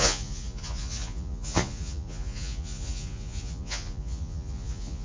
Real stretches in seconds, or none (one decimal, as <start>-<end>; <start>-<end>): none